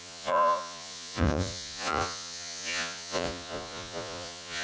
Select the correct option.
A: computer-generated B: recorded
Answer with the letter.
A